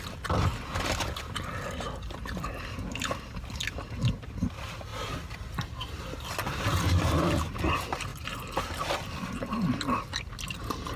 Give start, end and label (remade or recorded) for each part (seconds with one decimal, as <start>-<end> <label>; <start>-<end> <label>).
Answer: 0.0-11.0 recorded